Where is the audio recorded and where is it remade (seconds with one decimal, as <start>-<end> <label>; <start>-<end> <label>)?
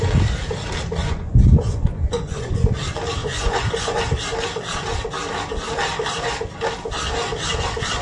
0.0-1.0 recorded; 1.0-2.6 remade; 2.6-3.2 recorded; 3.2-4.0 remade; 4.0-8.0 recorded